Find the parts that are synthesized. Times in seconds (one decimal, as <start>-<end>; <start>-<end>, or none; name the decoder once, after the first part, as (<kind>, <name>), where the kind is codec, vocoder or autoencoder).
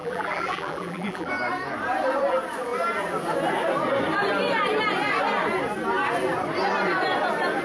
0.0-1.3 (vocoder, BigVGAN v2)